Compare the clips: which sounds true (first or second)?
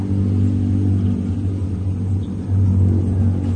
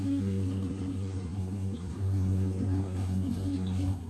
first